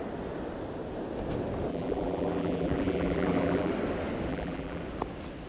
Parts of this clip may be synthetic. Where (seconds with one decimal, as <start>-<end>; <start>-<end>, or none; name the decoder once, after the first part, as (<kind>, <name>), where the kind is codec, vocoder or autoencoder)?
1.7-3.7 (vocoder, BigVGAN v2); 4.3-4.8